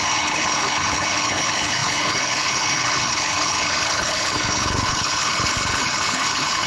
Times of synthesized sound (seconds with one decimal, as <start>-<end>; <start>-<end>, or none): 0.0-6.7